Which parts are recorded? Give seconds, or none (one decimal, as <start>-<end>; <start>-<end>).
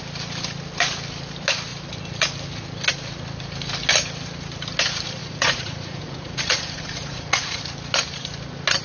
0.0-5.2; 7.6-8.8